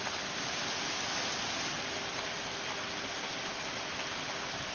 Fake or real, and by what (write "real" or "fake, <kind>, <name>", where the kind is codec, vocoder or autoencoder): real